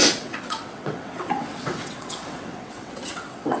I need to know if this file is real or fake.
fake